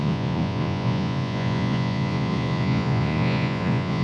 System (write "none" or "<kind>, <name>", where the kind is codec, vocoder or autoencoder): vocoder, Vocos